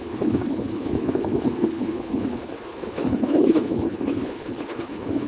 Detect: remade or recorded remade